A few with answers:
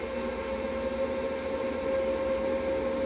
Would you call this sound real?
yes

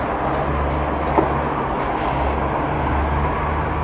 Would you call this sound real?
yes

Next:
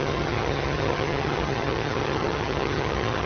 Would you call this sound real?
no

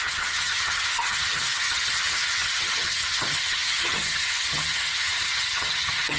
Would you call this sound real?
no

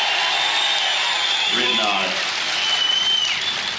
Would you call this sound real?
yes